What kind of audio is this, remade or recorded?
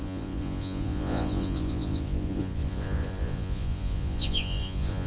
remade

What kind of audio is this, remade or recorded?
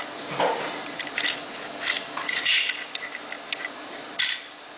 recorded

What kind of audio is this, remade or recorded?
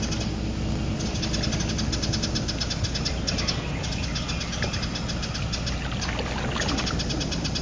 recorded